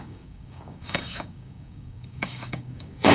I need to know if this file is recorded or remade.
remade